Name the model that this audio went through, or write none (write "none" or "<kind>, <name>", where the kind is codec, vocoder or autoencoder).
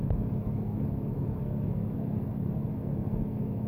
codec, SNAC